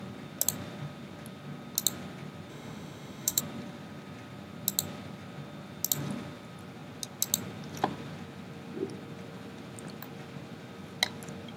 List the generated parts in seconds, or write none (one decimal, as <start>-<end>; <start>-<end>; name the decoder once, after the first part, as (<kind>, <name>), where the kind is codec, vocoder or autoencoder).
2.5-3.4 (autoencoder, DAC-VAE)